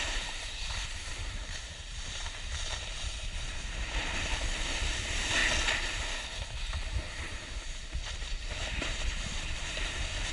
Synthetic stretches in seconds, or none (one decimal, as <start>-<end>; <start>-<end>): 0.0-5.4; 7.1-10.3